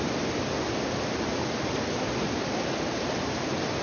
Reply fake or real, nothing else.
real